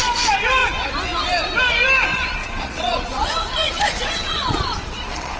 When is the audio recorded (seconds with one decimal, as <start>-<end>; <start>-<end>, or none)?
0.0-2.1